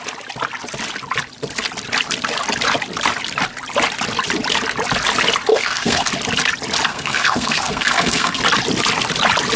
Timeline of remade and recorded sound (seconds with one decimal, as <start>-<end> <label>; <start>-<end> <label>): 0.0-5.5 recorded; 5.5-6.1 remade; 6.1-6.9 recorded; 6.9-8.4 remade; 8.4-9.6 recorded